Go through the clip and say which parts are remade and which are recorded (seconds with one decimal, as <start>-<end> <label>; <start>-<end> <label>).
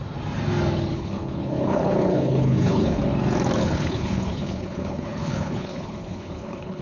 0.0-0.9 recorded; 0.9-3.0 remade; 3.0-3.6 recorded; 3.6-6.8 remade